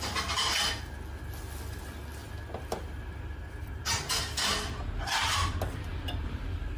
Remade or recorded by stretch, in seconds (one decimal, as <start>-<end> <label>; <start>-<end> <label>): 0.0-2.2 recorded; 2.2-4.2 remade; 4.2-5.9 recorded; 5.9-6.8 remade